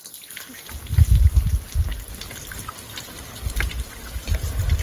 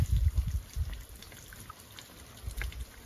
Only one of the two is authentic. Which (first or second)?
first